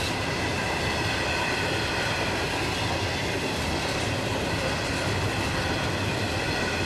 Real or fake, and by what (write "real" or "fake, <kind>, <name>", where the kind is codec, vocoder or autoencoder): real